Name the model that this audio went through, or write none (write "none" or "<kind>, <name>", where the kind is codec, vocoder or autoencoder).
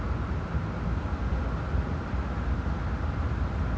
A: none